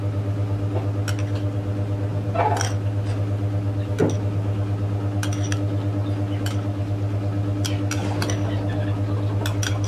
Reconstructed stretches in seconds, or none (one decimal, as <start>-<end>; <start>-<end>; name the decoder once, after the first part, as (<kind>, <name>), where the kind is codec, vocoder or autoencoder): none